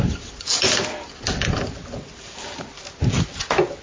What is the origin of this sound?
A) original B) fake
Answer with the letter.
A